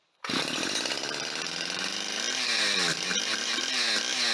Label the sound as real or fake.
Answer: fake